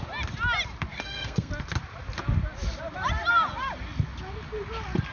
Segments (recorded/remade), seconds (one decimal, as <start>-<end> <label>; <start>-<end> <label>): 0.0-0.9 recorded; 0.9-1.5 remade; 1.5-5.1 recorded